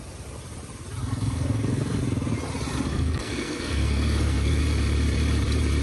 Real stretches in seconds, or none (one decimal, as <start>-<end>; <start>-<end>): 0.0-1.0; 2.0-2.9; 4.6-5.8